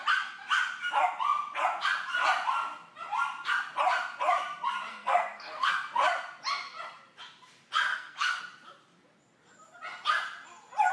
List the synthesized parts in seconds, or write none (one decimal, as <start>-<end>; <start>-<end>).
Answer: 4.9-5.7; 7.9-8.4